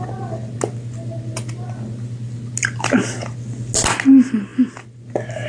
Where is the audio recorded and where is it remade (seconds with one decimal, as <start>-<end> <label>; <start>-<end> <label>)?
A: 0.0-5.5 recorded